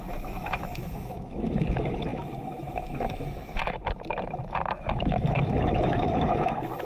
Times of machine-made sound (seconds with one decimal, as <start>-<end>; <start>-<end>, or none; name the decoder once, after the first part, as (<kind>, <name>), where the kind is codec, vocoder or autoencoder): 0.0-3.6 (autoencoder, DAC-VAE); 4.8-6.8